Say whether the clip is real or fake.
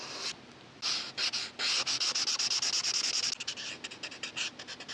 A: real